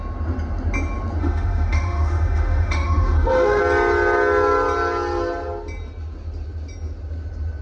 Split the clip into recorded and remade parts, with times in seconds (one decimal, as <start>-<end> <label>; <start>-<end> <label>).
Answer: 0.0-1.2 recorded; 1.2-3.6 remade; 3.6-7.6 recorded